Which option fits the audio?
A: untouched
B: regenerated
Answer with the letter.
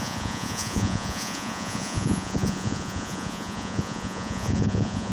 B